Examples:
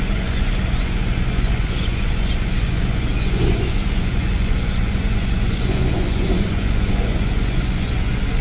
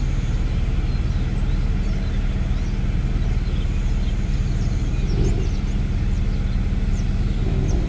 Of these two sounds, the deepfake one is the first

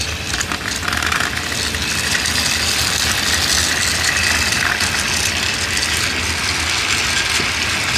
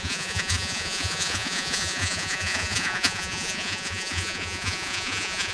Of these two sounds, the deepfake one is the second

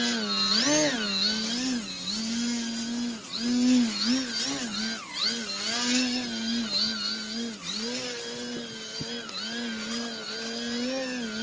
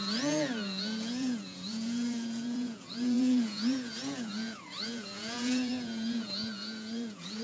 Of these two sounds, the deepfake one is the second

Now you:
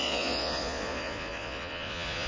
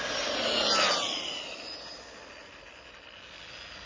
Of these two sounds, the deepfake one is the first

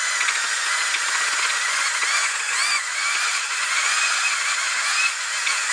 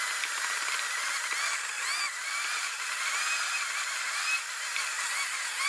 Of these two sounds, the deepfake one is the first